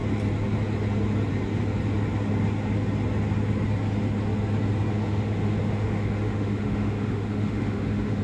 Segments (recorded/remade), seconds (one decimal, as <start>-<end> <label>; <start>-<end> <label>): 0.0-4.9 recorded; 4.9-8.2 remade